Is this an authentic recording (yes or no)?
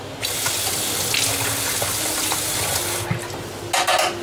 yes